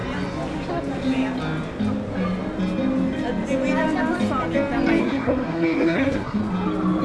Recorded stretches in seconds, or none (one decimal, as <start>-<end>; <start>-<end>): 0.0-5.0; 6.4-7.0